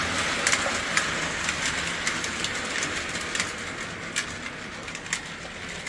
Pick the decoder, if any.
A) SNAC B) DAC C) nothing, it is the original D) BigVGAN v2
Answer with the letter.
C